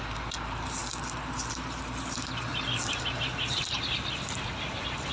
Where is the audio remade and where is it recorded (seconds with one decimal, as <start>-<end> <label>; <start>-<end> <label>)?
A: 0.0-5.1 recorded